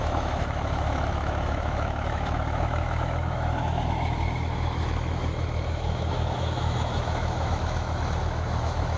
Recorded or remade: remade